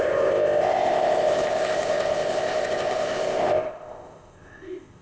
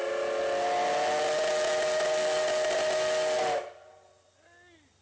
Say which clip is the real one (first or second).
second